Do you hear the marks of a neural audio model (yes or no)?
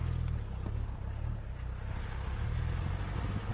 no